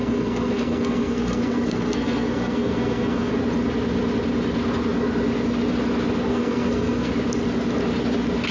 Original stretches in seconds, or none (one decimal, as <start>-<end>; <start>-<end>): 3.3-6.3; 7.1-8.5